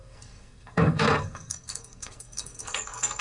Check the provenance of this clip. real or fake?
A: fake